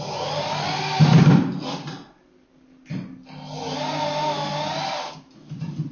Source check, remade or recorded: recorded